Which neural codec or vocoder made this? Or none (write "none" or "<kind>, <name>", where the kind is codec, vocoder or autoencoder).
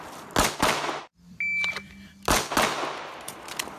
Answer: none